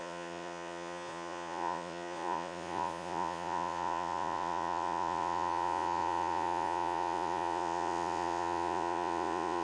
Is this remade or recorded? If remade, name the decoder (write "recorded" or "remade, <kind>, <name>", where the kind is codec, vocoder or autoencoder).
remade, vocoder, Vocos